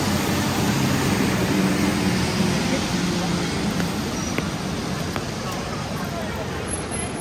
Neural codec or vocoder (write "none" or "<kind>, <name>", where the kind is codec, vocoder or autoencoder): none